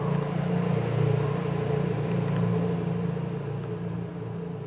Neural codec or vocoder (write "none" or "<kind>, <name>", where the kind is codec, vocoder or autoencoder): none